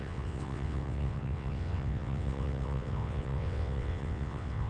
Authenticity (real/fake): fake